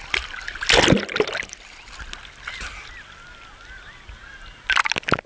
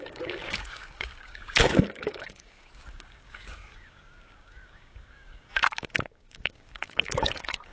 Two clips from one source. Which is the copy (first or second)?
second